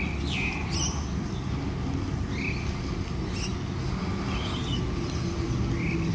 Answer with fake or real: real